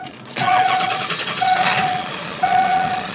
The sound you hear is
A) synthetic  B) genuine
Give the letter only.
A